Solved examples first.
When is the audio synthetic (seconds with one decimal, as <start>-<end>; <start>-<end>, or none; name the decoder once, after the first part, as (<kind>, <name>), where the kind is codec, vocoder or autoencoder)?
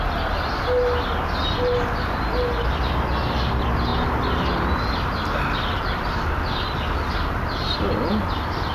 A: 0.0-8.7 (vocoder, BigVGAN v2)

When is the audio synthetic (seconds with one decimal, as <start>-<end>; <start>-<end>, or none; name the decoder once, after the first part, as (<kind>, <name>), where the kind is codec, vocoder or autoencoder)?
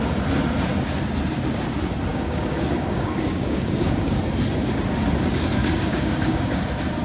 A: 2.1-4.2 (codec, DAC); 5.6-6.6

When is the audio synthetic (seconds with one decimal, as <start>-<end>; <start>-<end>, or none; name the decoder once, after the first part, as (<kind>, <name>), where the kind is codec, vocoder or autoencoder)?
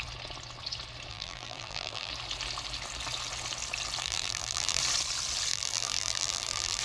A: 1.1-2.1 (vocoder, BigVGAN v2); 4.0-4.8; 5.5-6.8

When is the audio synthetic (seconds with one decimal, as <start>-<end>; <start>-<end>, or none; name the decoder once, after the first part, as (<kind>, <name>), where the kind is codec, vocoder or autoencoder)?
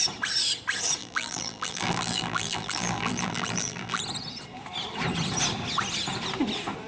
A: 1.0-4.0 (vocoder, BigVGAN v2)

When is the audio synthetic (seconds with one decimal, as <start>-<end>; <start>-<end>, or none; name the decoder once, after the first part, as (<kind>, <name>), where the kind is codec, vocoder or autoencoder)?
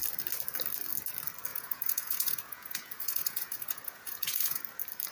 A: 1.5-4.6 (vocoder, Vocos)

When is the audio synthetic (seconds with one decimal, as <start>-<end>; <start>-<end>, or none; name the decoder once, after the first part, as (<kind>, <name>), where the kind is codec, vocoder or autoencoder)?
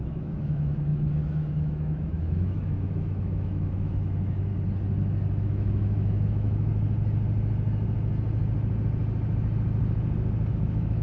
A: 0.0-4.5 (autoencoder, DAC-VAE); 5.4-6.7; 10.5-11.0